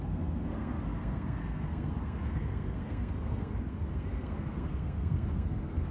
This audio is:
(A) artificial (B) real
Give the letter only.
A